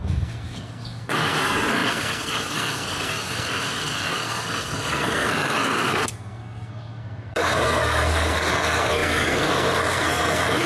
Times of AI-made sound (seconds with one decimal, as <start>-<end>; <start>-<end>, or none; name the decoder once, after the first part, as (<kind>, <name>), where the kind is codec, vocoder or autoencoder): 0.0-10.7 (codec, SNAC)